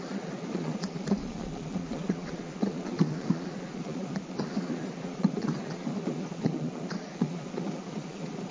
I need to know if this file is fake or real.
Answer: fake